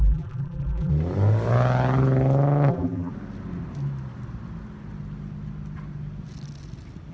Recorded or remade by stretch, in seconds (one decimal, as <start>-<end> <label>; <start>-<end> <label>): 0.0-0.9 remade; 0.9-2.7 recorded; 2.7-3.1 remade; 3.1-7.1 recorded